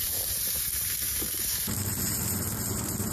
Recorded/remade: remade